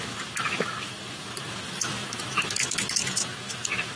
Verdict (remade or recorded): remade